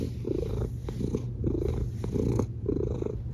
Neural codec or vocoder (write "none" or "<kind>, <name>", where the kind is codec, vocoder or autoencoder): none